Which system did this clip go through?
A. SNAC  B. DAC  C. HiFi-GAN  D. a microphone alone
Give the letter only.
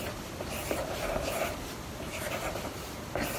D